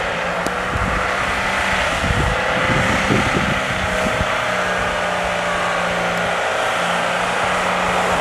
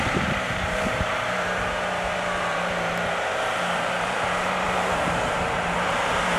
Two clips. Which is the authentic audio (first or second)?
first